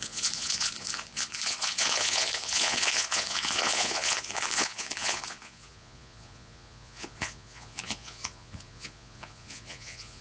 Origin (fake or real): fake